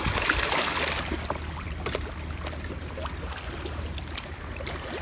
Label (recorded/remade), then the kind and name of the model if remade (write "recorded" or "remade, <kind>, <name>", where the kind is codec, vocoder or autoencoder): recorded